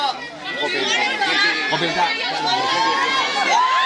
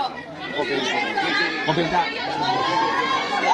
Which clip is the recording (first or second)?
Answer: first